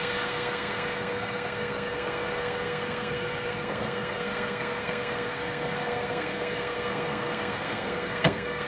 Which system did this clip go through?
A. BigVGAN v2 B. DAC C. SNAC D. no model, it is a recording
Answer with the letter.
C